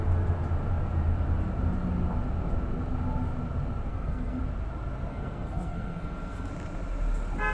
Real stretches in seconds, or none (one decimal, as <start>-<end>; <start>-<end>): 0.0-3.9; 4.4-5.1; 6.5-7.5